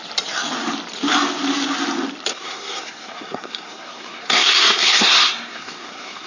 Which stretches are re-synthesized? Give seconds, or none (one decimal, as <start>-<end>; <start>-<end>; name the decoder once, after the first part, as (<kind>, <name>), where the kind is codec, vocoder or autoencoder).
2.3-6.3 (codec, SNAC)